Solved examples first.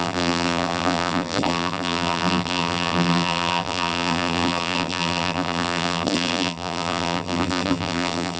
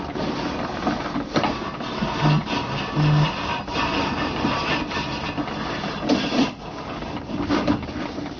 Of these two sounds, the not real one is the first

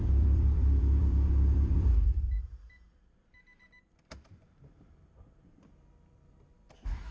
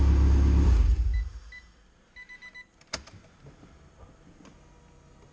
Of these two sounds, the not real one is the first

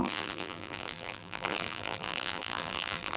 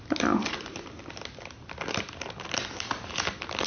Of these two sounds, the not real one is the first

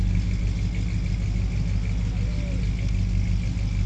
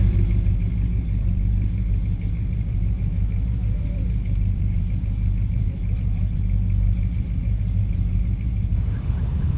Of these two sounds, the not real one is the second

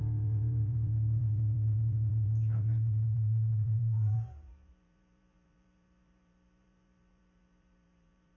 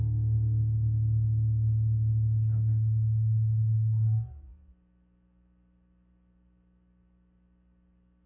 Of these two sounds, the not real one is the first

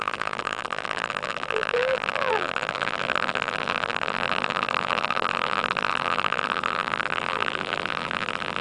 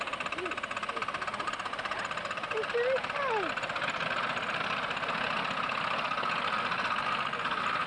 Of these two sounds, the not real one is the first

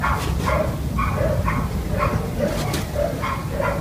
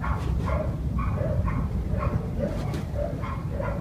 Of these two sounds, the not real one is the second